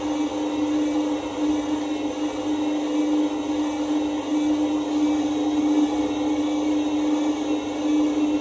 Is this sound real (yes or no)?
yes